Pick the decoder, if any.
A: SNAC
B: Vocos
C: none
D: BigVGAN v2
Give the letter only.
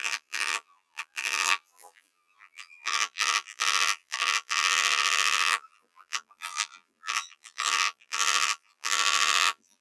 D